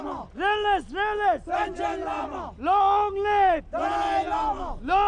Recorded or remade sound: recorded